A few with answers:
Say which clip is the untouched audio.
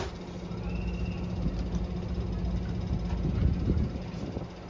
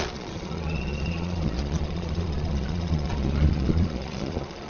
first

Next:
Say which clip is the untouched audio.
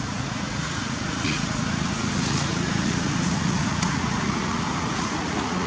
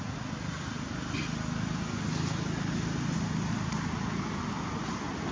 second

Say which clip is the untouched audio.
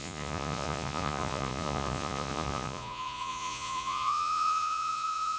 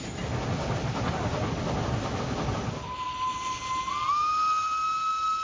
second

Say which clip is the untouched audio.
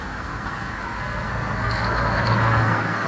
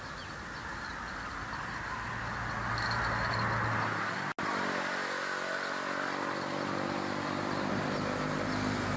second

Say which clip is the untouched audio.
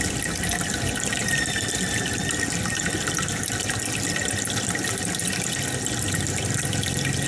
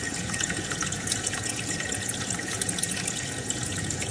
first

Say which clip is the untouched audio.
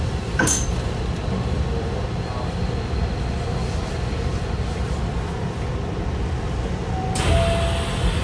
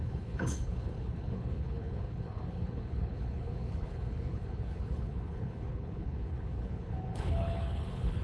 first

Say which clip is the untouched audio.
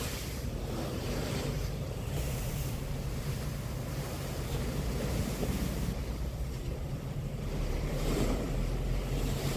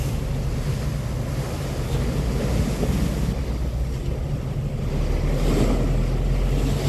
second